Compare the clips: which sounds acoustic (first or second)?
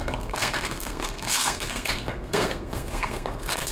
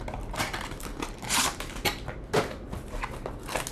second